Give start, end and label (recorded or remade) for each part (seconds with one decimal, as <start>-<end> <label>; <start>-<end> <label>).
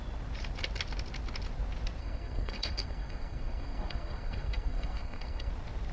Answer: 0.0-2.0 recorded; 2.0-5.5 remade; 5.5-5.9 recorded